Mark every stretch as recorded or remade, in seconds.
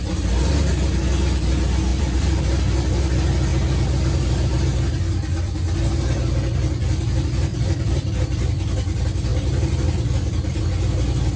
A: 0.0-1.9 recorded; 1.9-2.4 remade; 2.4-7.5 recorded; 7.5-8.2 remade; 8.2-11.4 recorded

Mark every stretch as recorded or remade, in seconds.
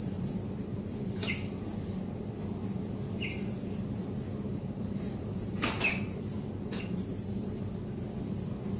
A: 0.0-4.5 recorded; 4.5-6.5 remade; 6.5-8.8 recorded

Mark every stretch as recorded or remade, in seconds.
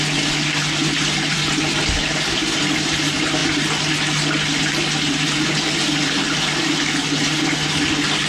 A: 0.0-8.3 recorded